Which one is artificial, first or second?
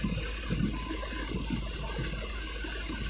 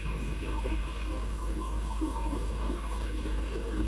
second